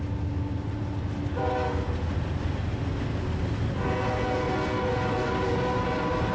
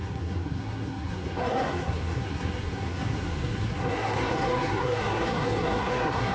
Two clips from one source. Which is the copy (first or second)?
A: second